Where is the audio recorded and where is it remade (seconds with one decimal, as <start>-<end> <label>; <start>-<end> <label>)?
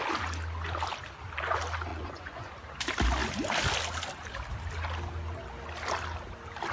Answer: 0.0-1.9 recorded; 1.9-2.5 remade; 2.5-6.7 recorded